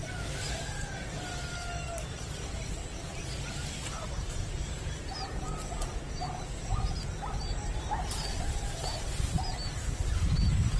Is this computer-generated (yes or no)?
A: no